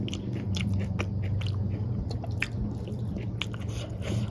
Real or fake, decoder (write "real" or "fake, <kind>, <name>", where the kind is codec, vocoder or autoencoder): real